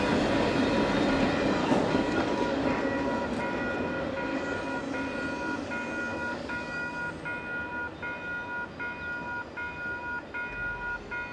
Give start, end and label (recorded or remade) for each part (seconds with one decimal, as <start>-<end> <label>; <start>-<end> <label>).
0.0-1.6 recorded; 1.6-2.8 remade; 2.8-4.3 recorded; 4.3-4.8 remade; 4.8-6.1 recorded; 6.1-6.9 remade; 6.9-11.3 recorded